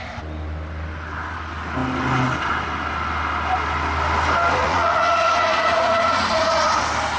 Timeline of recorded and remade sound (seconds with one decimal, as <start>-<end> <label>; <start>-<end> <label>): 0.0-4.6 recorded; 4.6-6.8 remade; 6.8-7.2 recorded